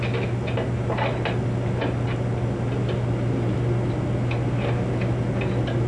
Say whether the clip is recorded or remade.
recorded